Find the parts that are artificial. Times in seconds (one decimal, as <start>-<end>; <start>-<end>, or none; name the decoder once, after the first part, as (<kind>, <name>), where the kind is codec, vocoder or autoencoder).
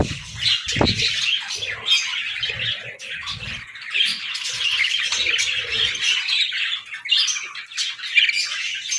4.1-6.6 (vocoder, BigVGAN v2)